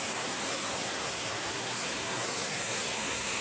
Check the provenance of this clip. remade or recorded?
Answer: remade